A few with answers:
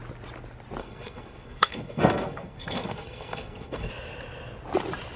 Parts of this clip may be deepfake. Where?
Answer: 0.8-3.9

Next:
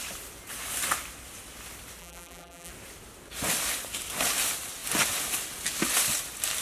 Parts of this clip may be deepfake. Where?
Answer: 2.0-2.7